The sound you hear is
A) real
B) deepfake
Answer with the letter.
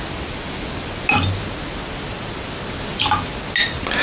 A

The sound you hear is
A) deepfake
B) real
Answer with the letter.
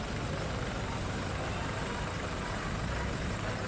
A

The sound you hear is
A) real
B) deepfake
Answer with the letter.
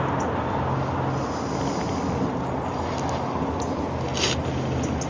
A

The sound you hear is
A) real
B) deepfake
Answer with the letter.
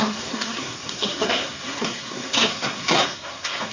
B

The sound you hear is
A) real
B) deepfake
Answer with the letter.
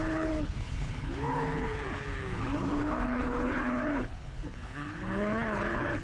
B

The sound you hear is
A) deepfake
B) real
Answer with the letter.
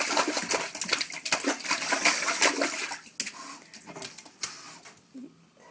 B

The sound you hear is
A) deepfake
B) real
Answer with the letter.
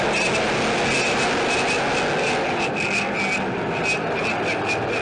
B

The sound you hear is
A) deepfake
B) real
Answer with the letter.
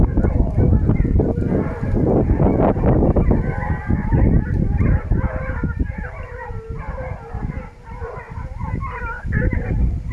B